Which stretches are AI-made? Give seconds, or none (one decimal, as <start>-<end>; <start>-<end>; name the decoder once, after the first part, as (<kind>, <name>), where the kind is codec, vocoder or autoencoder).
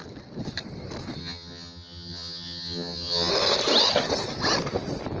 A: 1.2-3.3 (vocoder, HiFi-GAN)